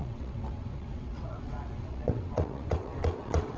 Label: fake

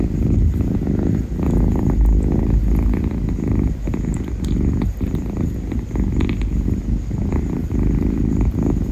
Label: real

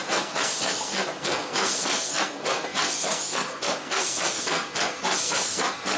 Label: fake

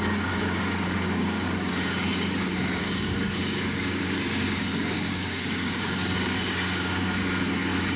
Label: fake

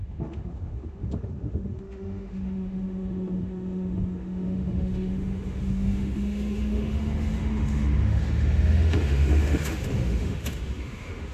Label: fake